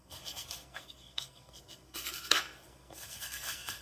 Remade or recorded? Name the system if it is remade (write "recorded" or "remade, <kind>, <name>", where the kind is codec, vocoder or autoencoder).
remade, codec, SNAC